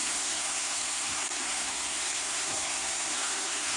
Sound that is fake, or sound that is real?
fake